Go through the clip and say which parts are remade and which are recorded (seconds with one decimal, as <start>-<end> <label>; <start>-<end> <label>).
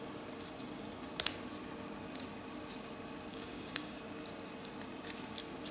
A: 0.0-3.3 recorded; 3.3-4.0 remade; 4.0-5.7 recorded